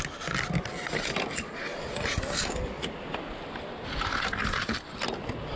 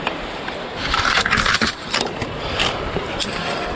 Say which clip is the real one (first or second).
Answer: first